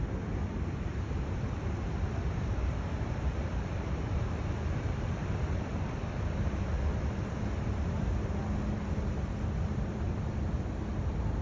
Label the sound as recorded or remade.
remade